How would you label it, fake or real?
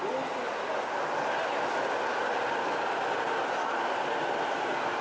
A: real